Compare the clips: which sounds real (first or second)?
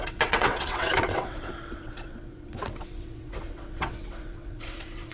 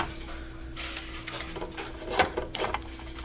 second